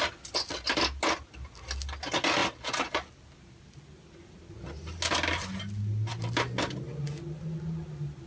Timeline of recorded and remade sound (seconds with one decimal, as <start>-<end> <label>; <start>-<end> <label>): 0.0-8.3 recorded